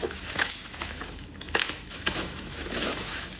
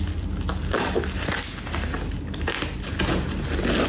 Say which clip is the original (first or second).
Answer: second